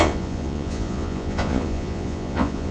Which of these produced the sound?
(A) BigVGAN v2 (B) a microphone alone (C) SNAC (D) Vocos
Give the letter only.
D